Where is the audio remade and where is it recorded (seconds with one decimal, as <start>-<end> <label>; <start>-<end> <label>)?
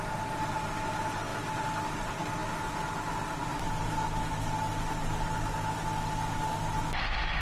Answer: 0.0-7.4 recorded